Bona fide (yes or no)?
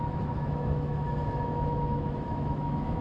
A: no